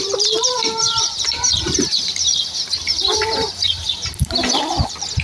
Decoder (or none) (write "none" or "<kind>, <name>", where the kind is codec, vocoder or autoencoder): vocoder, BigVGAN v2